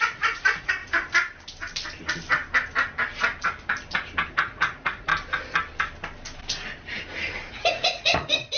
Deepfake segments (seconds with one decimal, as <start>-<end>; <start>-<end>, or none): 0.0-0.8; 4.3-5.1; 7.5-8.6